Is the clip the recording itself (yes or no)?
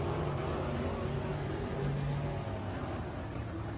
yes